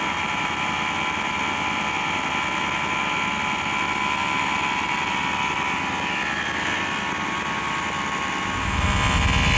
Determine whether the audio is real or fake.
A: real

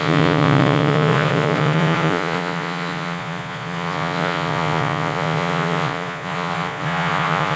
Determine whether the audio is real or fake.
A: fake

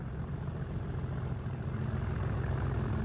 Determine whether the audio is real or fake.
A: real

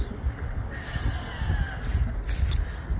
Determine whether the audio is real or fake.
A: real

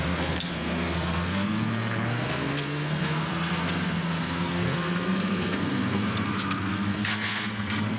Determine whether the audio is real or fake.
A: fake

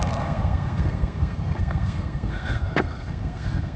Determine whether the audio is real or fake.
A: fake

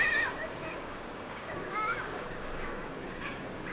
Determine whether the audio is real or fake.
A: fake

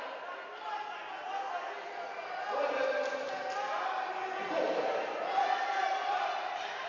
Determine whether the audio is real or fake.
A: real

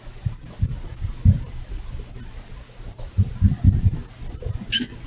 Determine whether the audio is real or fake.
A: real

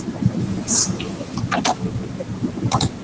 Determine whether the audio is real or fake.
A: real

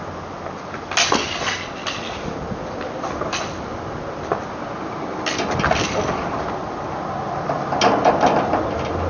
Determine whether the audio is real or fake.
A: real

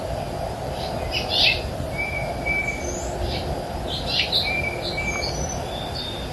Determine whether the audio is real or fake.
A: real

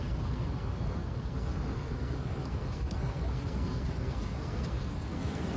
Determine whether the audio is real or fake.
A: fake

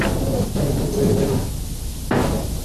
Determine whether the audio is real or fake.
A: real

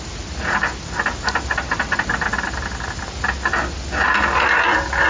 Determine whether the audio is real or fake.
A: real